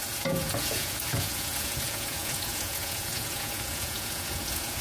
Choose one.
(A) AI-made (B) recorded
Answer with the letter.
A